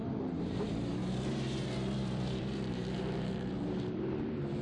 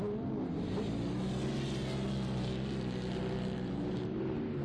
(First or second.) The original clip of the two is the second